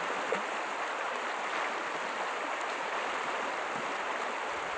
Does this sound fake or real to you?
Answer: real